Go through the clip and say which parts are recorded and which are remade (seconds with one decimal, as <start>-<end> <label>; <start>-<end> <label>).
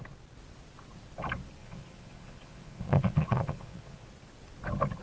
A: 0.0-1.6 recorded; 1.6-4.1 remade; 4.1-5.0 recorded